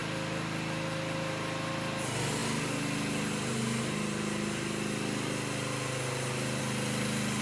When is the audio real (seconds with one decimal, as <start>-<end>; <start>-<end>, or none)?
0.0-7.4